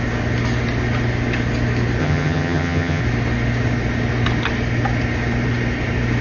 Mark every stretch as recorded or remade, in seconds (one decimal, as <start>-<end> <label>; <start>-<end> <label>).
0.0-2.0 recorded; 2.0-3.0 remade; 3.0-6.2 recorded